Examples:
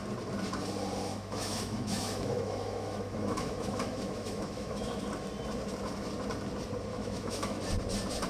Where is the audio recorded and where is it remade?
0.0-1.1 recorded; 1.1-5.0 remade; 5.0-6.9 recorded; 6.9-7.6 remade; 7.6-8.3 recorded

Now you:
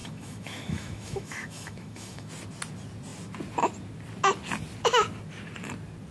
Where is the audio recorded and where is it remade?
0.0-2.3 remade; 2.3-6.1 recorded

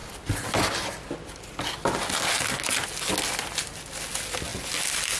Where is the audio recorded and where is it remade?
0.0-5.2 recorded

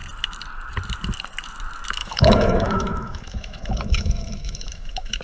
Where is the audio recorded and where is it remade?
0.0-2.0 recorded; 2.0-5.2 remade